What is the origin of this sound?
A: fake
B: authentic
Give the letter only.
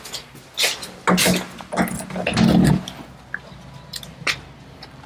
B